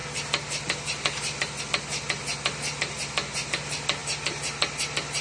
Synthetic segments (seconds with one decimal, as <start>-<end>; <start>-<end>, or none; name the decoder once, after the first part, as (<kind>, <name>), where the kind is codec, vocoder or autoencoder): none